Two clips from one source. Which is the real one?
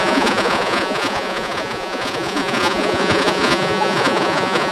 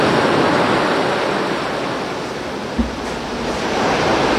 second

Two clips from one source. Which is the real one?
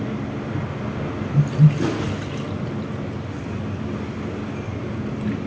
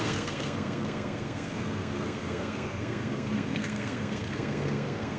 first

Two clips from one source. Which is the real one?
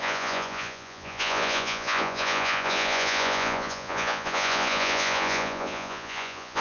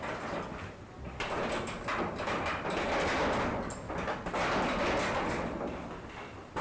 second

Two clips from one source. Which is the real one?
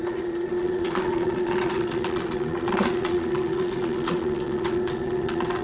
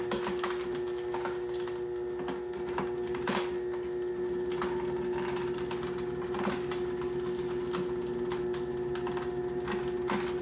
second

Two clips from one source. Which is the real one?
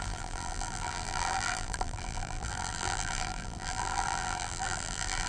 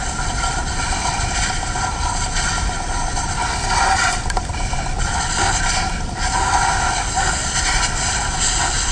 second